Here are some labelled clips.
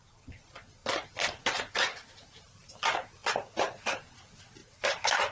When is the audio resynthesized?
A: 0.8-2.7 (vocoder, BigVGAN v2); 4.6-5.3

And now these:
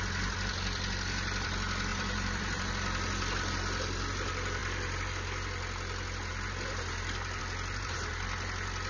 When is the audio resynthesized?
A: 1.9-2.7 (vocoder, BigVGAN v2)

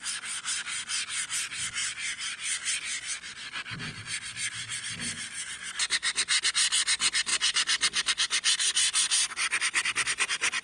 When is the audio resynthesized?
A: none

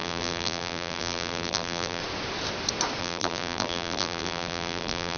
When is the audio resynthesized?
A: 0.0-2.0 (vocoder, BigVGAN v2); 3.0-5.2

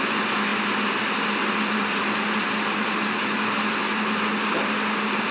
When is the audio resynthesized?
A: none

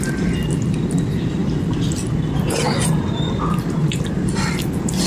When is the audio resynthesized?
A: 3.8-4.3 (vocoder, BigVGAN v2)

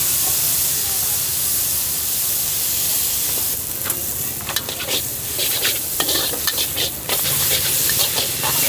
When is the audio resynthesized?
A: none